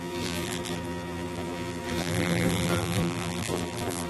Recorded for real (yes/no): no